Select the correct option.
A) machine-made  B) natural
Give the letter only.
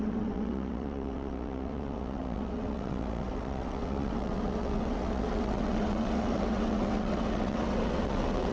A